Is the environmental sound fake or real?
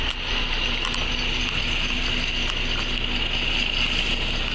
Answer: real